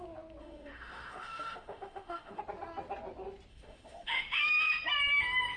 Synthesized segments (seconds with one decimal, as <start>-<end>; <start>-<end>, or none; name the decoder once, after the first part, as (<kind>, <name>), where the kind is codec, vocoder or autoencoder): 0.4-2.4 (autoencoder, DAC-VAE); 3.5-4.7